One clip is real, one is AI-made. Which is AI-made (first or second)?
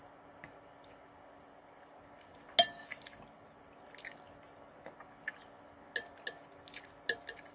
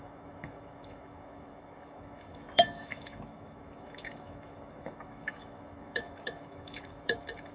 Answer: second